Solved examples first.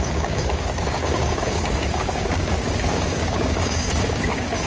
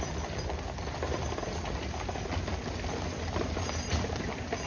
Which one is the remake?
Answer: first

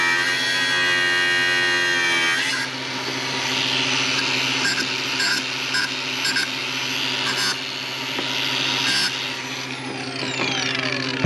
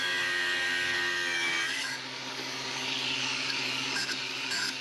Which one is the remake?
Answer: second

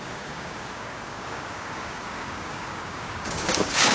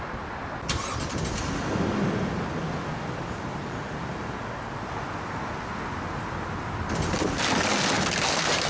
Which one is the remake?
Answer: first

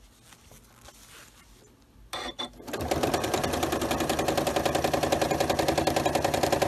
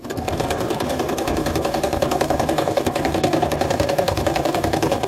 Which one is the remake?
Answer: second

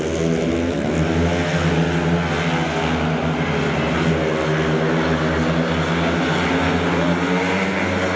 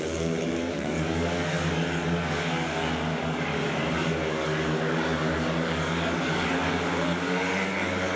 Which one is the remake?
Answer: second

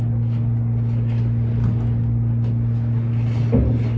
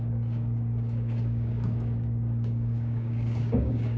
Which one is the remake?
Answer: second